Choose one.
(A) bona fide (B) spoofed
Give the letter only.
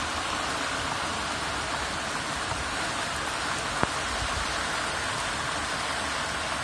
A